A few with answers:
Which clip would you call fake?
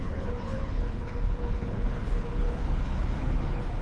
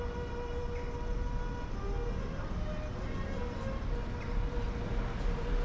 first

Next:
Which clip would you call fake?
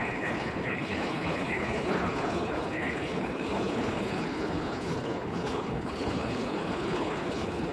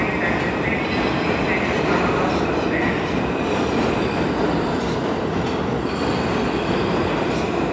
first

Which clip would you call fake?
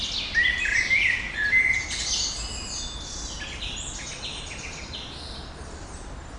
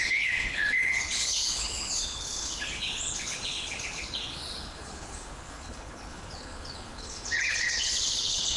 second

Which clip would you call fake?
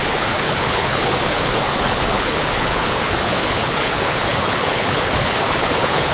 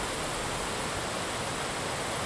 first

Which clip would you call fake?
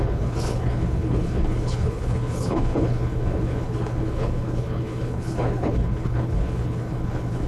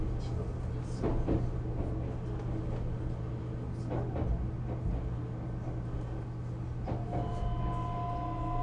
first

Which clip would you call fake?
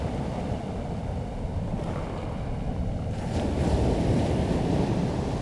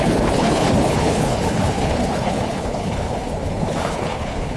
second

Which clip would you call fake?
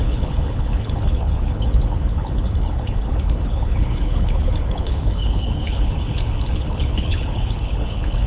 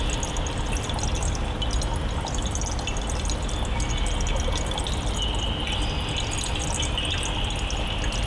first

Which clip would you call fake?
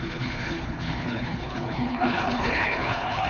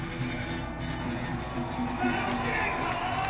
first